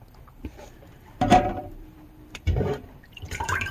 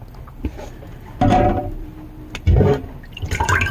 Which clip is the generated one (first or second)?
first